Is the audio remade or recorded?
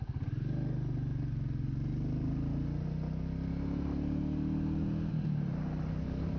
recorded